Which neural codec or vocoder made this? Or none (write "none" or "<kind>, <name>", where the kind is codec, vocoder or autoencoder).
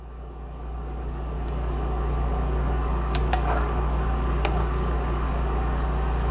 codec, DAC